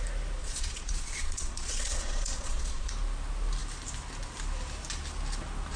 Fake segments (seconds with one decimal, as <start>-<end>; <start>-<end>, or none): 0.4-2.9